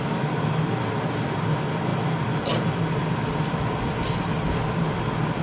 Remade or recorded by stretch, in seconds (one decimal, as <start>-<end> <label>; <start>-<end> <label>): 0.0-5.4 recorded